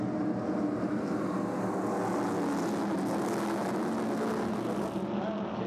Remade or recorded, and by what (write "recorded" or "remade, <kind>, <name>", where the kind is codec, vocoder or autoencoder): recorded